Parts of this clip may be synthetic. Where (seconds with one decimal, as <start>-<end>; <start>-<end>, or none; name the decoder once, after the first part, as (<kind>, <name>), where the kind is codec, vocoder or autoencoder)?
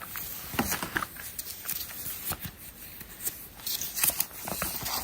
none